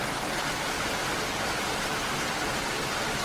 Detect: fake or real real